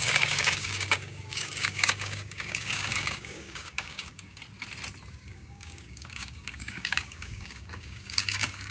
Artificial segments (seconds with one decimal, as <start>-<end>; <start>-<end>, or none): 0.0-4.4; 5.1-8.7